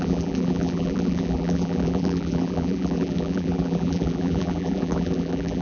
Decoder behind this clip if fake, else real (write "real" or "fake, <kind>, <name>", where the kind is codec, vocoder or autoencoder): fake, vocoder, BigVGAN v2